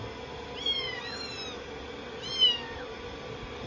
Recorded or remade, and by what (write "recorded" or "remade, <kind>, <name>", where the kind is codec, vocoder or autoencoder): recorded